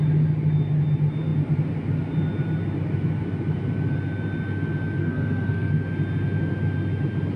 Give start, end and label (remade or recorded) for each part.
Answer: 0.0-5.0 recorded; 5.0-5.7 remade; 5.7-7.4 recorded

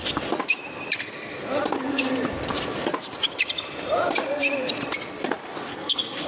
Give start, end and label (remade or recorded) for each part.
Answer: 0.0-5.7 recorded; 5.7-6.3 remade

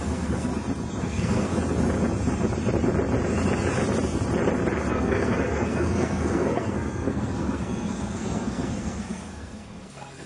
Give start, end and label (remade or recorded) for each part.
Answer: 0.0-0.5 remade; 0.5-1.0 recorded; 1.0-1.5 remade; 1.5-4.9 recorded; 4.9-10.3 remade

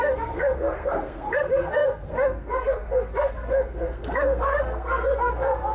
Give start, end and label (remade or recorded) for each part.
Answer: 0.0-5.7 remade

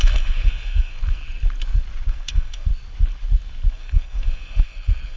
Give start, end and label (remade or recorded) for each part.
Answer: 0.0-1.2 remade; 1.2-2.1 recorded; 2.1-2.7 remade; 2.7-3.7 recorded; 3.7-5.2 remade

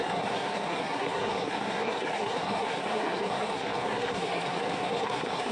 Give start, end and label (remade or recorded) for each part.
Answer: 0.0-5.5 remade